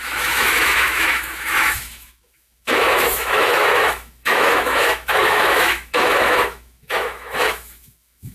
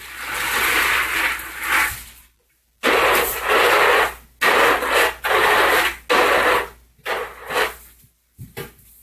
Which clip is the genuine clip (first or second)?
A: second